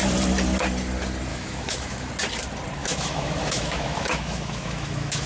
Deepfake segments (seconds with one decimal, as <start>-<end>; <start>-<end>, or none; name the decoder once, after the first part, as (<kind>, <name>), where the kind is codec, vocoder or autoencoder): 1.3-2.1 (autoencoder, DAC-VAE); 2.8-5.3